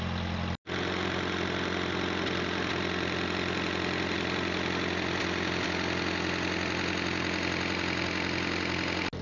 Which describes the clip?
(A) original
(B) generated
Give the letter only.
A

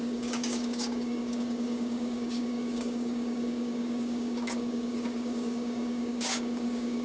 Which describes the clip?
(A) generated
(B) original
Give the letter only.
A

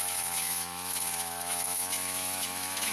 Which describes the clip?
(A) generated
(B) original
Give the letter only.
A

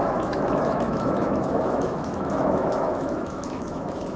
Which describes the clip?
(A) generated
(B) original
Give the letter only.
A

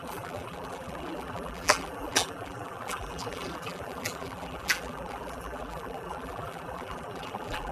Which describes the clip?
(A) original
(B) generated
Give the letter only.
B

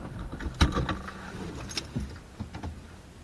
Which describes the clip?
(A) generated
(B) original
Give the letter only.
B